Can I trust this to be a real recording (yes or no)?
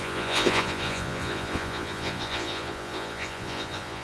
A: no